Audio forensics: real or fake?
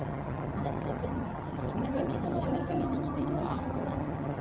fake